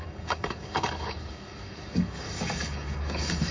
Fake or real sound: fake